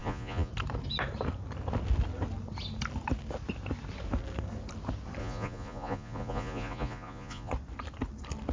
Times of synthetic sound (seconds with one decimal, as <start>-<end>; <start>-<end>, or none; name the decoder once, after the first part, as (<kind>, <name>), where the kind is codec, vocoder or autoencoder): 0.0-0.5 (vocoder, Vocos); 5.2-7.5